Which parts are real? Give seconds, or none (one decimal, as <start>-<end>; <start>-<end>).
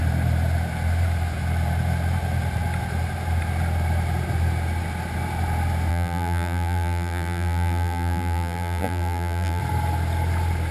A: 0.0-5.9; 9.6-10.7